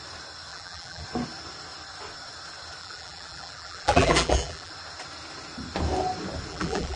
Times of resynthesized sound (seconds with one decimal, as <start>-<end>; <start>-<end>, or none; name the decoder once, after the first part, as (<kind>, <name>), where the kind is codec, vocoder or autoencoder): 0.5-1.0 (vocoder, BigVGAN v2); 2.8-4.7; 6.5-7.0